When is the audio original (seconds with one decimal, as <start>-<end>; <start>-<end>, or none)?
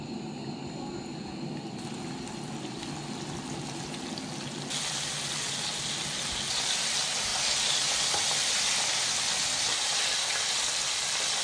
0.0-11.4